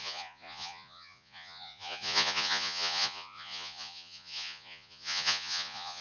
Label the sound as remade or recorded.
remade